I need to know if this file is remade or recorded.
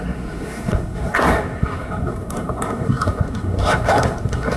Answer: remade